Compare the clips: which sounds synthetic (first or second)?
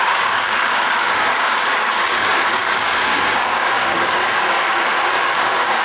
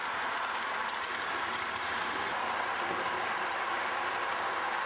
first